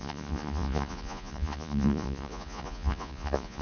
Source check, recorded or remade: remade